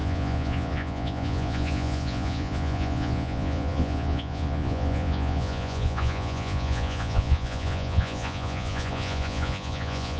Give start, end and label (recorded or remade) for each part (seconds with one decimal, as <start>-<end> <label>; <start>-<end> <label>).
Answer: 0.0-10.2 remade